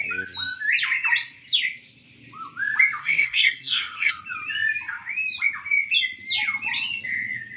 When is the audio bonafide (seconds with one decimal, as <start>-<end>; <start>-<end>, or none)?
0.0-3.0; 4.1-7.6